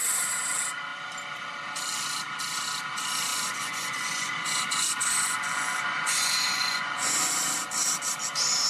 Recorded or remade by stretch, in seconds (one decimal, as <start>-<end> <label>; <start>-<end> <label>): 0.0-3.3 recorded; 3.3-7.4 remade; 7.4-8.7 recorded